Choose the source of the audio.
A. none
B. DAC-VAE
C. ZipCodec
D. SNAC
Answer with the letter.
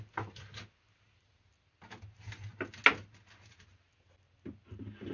A